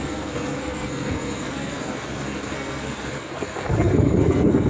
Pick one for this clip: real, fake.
fake